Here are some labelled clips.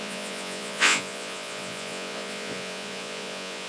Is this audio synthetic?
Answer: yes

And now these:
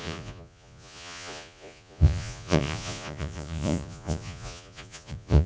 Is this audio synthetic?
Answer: yes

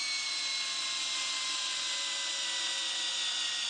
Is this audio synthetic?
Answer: no